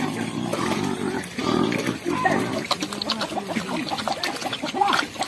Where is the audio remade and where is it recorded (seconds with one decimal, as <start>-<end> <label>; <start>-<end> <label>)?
0.0-5.3 recorded